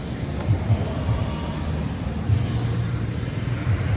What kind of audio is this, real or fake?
fake